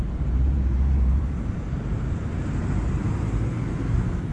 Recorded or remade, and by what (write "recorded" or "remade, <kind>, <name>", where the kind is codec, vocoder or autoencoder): remade, vocoder, BigVGAN v2